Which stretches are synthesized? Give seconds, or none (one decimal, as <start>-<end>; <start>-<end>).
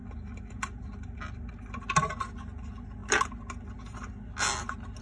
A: none